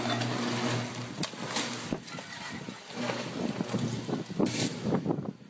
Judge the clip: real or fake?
real